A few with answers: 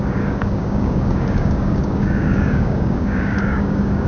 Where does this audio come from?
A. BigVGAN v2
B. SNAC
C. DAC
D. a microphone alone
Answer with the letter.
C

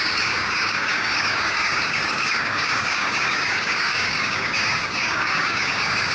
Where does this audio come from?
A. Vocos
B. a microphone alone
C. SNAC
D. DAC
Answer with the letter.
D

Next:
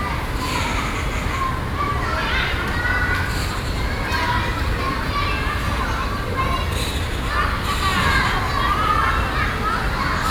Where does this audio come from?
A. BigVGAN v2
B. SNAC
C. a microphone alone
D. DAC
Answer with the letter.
C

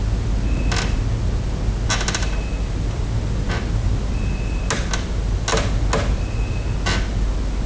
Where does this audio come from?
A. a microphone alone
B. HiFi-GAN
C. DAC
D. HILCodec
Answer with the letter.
A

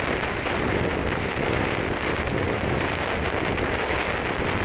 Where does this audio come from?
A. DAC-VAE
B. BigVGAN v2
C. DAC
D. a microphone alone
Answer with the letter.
D